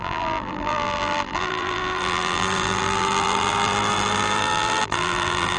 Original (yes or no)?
no